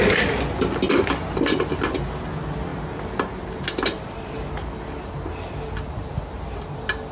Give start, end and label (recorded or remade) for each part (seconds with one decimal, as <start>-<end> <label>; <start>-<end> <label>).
0.0-7.1 recorded